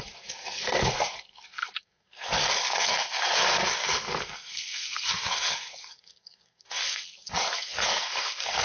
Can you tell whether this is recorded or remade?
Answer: remade